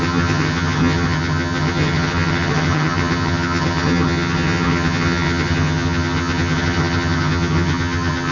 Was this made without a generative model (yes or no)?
no